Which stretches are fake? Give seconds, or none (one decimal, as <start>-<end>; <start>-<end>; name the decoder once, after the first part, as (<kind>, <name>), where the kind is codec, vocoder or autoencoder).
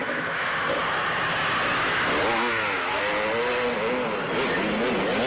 0.0-0.8 (autoencoder, DAC-VAE); 2.3-3.0